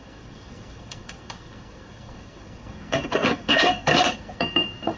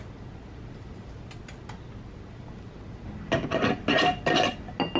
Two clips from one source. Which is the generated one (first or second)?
first